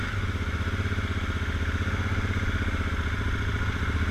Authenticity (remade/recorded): recorded